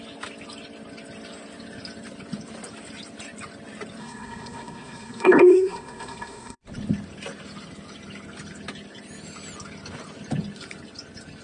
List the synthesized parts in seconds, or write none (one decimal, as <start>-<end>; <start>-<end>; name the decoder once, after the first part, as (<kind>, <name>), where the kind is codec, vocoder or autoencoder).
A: 4.0-6.6 (codec, SNAC)